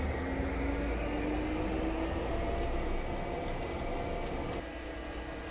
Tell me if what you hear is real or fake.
real